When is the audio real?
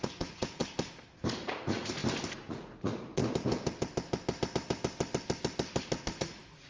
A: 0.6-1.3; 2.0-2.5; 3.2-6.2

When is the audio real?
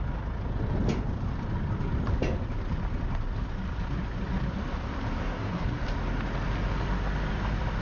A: 0.0-5.2; 5.8-7.8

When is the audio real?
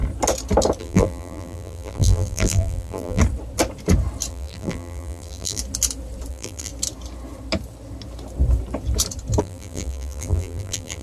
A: 0.0-0.8; 3.2-4.3; 5.6-6.3; 6.7-9.4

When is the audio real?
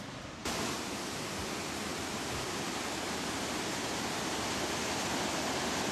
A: 0.0-0.4; 1.2-1.9; 4.0-5.9